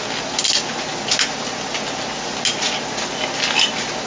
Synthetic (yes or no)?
no